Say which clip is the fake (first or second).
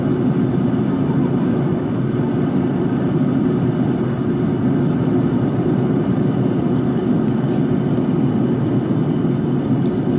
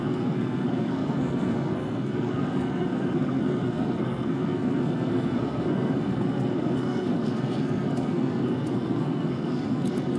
second